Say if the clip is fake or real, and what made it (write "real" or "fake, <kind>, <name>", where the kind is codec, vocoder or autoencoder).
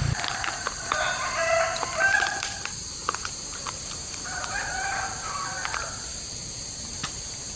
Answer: fake, vocoder, BigVGAN v2